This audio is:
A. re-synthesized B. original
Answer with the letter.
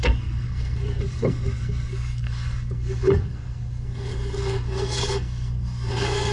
A